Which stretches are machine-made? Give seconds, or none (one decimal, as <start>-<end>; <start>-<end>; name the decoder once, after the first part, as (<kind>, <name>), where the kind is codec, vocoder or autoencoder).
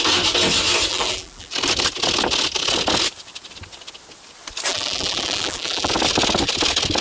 0.9-1.5 (vocoder, BigVGAN v2); 4.7-5.9